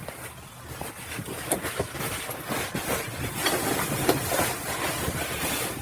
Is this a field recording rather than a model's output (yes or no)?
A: yes